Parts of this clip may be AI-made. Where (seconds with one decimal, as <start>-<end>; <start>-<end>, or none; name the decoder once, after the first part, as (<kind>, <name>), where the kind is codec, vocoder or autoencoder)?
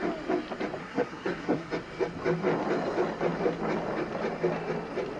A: 0.8-1.7 (codec, SNAC)